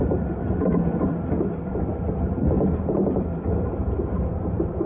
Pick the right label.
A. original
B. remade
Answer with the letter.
A